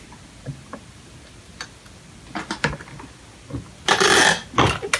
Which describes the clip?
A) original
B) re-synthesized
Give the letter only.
A